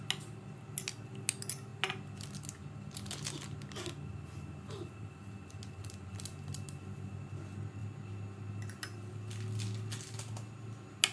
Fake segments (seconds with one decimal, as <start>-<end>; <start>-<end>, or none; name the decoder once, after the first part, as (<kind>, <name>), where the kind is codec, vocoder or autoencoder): none